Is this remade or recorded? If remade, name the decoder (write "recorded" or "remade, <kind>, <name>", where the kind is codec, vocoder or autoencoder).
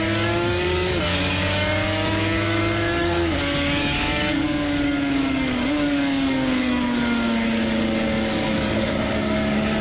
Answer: remade, codec, DAC